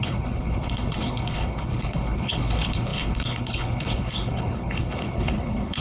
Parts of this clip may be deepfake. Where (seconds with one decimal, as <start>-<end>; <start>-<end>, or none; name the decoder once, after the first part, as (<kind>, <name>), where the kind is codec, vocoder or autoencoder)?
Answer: 0.0-5.8 (codec, HILCodec)